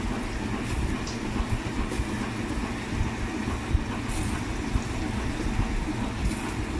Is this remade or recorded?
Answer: recorded